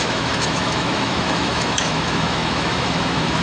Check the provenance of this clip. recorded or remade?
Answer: remade